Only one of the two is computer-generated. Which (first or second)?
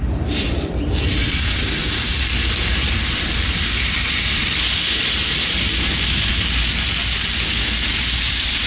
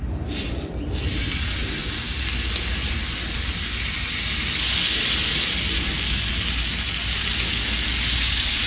first